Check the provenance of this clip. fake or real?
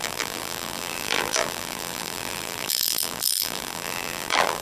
fake